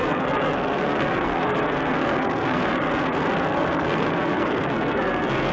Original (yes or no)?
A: no